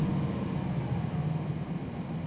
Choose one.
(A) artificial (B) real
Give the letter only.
B